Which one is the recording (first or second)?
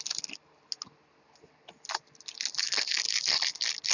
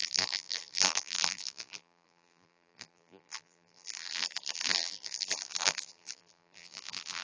first